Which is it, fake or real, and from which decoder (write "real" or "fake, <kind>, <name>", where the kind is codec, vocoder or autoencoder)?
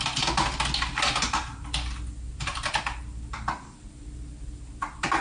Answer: real